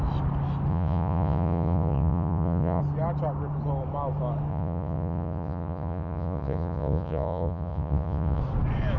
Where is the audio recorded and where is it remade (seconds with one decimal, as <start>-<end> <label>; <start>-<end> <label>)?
0.0-0.7 recorded; 0.7-2.8 remade; 2.8-4.5 recorded; 4.5-8.4 remade; 8.4-9.0 recorded